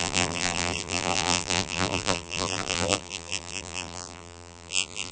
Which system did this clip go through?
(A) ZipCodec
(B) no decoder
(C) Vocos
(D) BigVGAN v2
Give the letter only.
D